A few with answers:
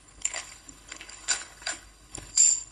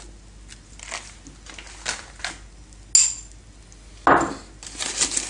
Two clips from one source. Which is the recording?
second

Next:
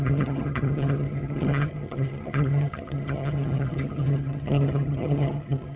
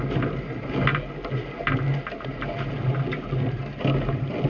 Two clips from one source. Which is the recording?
second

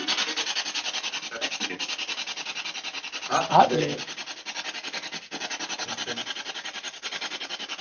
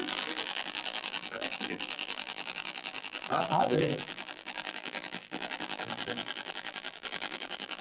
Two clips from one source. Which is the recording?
first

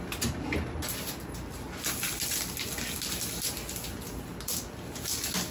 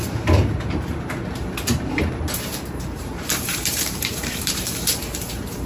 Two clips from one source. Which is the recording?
first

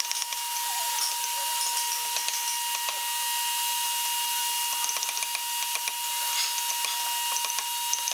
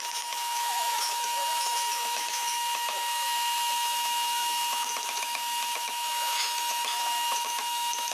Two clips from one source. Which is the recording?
first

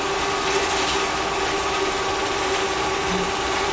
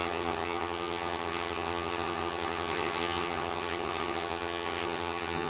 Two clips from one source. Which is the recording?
first